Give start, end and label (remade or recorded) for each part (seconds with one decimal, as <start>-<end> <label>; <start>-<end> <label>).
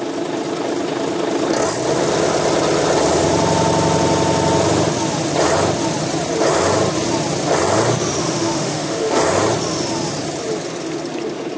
0.0-8.2 recorded; 8.2-9.2 remade; 9.2-11.6 recorded